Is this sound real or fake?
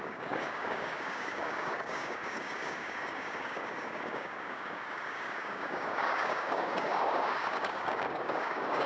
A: fake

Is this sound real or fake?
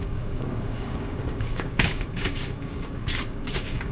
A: fake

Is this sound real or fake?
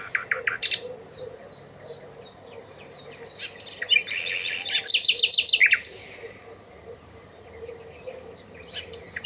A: real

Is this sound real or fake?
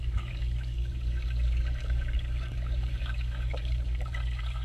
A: fake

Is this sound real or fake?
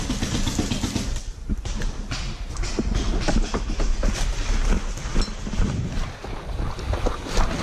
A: real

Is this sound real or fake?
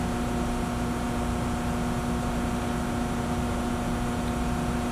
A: real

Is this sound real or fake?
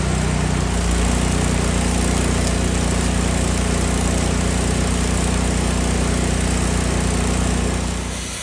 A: real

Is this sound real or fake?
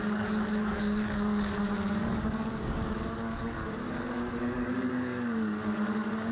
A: fake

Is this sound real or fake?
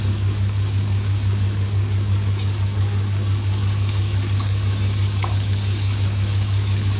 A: fake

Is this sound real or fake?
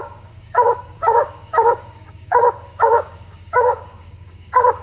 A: fake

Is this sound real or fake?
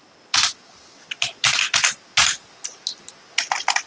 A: real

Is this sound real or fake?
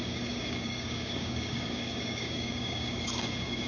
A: fake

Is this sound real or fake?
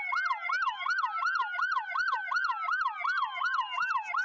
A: real